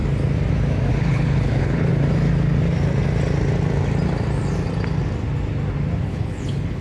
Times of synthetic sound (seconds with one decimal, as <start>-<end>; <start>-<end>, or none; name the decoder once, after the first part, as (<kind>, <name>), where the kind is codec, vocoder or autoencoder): 0.9-1.9 (codec, HILCodec); 6.0-6.8

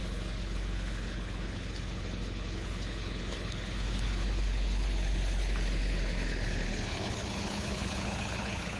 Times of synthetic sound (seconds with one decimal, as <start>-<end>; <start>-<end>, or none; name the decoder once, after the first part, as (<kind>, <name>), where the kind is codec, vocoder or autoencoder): 0.0-8.8 (codec, HILCodec)

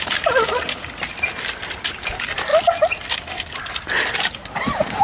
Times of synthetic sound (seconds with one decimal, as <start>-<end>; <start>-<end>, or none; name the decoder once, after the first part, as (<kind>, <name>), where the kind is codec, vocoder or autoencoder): none